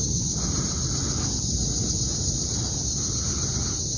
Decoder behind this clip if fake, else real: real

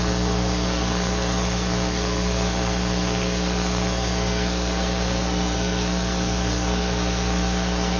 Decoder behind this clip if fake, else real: fake, codec, SNAC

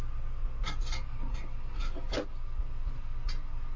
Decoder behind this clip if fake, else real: real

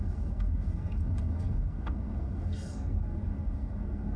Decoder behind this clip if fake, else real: fake, codec, SNAC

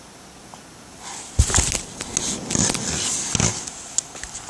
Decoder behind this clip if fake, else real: real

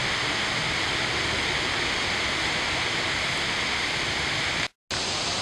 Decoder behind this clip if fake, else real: real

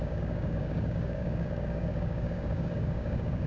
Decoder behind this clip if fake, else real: fake, codec, DAC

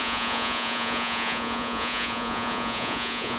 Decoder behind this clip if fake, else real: fake, vocoder, Vocos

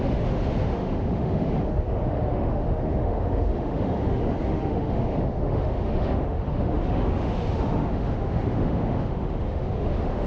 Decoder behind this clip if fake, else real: fake, autoencoder, DAC-VAE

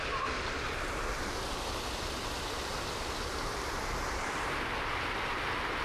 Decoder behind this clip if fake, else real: real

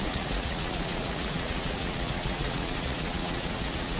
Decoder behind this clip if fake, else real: fake, vocoder, Vocos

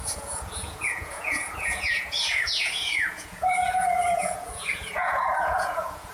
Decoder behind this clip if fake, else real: fake, vocoder, Vocos